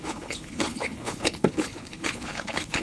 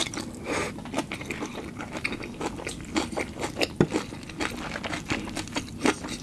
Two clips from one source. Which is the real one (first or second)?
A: second